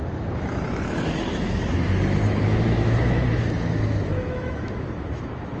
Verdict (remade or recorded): remade